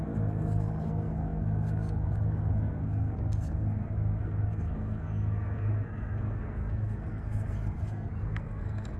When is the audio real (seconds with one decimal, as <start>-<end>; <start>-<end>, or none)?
none